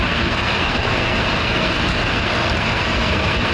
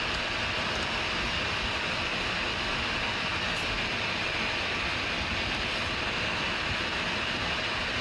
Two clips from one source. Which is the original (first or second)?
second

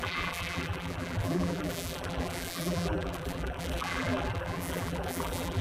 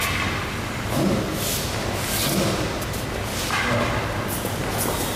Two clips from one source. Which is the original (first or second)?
second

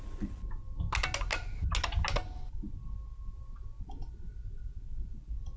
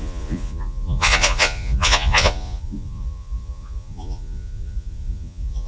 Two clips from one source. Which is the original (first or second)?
first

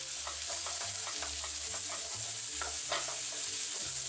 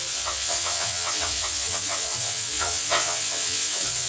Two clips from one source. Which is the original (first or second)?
first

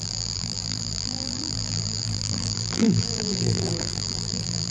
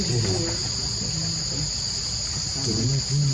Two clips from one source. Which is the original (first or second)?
second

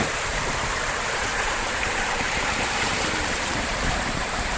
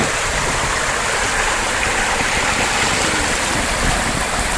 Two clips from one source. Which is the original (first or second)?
second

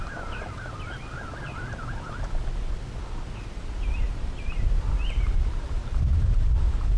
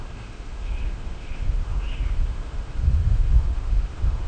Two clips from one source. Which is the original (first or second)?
first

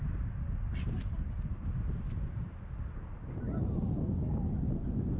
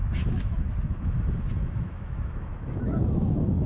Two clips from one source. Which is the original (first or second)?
first